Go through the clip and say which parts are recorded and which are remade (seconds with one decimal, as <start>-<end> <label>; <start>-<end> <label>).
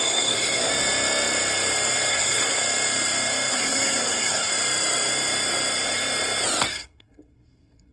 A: 0.0-0.7 remade; 0.7-2.1 recorded; 2.1-2.6 remade; 2.6-3.5 recorded; 3.5-4.5 remade; 4.5-6.7 recorded; 6.7-7.9 remade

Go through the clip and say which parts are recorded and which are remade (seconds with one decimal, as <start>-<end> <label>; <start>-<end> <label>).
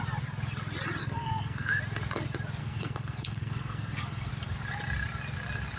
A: 0.0-1.0 recorded; 1.0-1.8 remade; 1.8-2.6 recorded; 2.6-4.3 remade; 4.3-5.8 recorded